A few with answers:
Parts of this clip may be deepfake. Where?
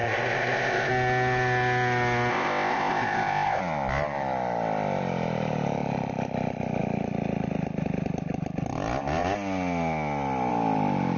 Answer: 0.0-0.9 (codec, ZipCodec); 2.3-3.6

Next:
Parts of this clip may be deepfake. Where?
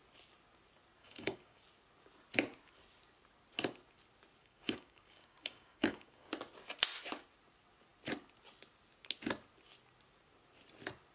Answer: 1.0-1.6 (codec, DAC); 4.4-6.3